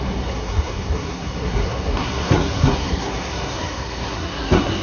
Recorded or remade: remade